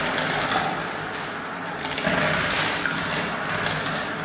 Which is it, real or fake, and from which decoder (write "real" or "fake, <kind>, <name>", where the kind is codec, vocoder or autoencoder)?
real